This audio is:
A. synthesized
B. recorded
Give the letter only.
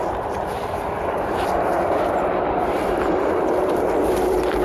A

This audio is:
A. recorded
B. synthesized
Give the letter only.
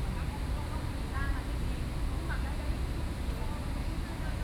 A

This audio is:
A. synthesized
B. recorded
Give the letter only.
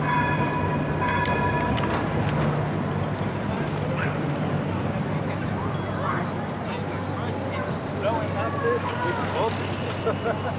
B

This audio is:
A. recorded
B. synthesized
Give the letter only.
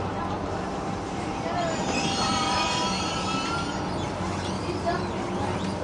B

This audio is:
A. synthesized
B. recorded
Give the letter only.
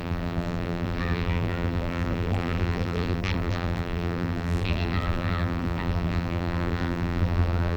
A